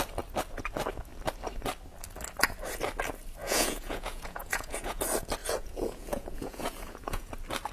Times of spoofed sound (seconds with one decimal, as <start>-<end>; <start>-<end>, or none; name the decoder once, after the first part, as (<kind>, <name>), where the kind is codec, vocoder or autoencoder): 3.4-5.0 (vocoder, Vocos); 5.4-7.3